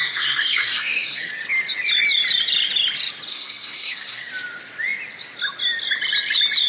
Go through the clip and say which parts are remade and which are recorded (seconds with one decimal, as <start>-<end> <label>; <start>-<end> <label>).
0.0-1.3 remade; 1.3-3.3 recorded; 3.3-4.3 remade; 4.3-6.7 recorded

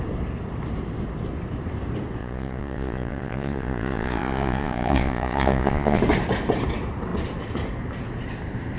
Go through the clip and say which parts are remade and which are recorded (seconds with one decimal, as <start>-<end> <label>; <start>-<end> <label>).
0.0-2.2 recorded; 2.2-6.0 remade; 6.0-8.8 recorded